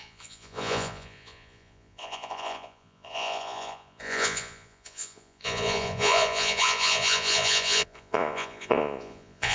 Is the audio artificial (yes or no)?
yes